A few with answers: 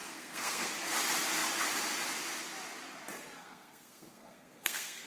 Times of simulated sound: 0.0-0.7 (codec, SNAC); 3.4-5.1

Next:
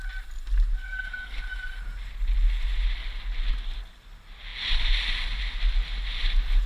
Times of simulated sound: 0.9-1.4 (codec, SNAC)

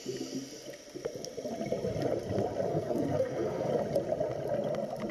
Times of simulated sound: 2.7-3.7 (codec, SNAC)

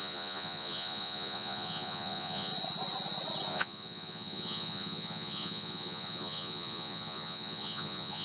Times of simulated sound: 0.0-2.5 (vocoder, Vocos); 3.5-8.2